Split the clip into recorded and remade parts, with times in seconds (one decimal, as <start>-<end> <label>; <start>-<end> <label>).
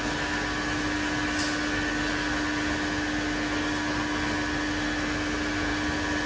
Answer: 0.0-6.3 recorded